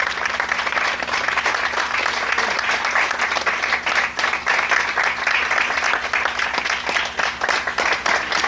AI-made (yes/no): no